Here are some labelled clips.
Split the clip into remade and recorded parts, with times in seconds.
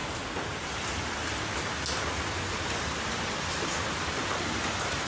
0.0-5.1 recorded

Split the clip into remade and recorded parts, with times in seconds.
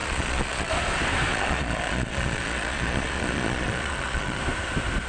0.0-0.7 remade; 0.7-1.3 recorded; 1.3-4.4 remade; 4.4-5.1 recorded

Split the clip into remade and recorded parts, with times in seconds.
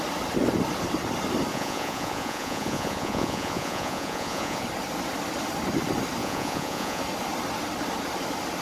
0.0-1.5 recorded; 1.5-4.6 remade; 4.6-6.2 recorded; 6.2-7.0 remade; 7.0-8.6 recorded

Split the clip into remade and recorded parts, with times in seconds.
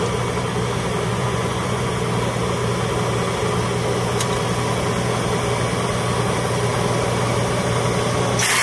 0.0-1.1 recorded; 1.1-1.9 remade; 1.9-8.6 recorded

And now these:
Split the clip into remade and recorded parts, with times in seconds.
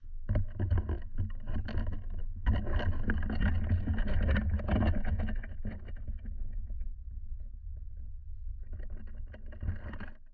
0.0-10.3 recorded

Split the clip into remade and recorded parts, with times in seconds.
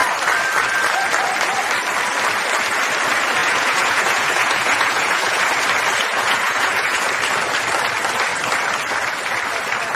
0.0-3.4 recorded; 3.4-5.4 remade; 5.4-6.1 recorded; 6.1-7.1 remade; 7.1-9.9 recorded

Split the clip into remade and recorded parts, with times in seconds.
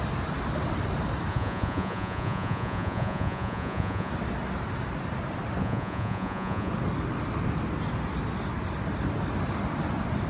0.0-1.3 recorded; 1.3-4.1 remade; 4.1-5.6 recorded; 5.6-6.7 remade; 6.7-10.3 recorded